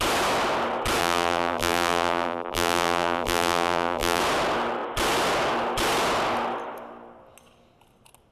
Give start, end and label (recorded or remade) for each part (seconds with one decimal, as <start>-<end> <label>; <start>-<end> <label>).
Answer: 0.0-1.0 recorded; 1.0-4.2 remade; 4.2-8.3 recorded